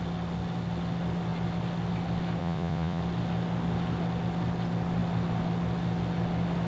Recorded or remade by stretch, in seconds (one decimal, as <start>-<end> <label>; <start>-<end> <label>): 0.0-2.4 recorded; 2.4-3.0 remade; 3.0-6.7 recorded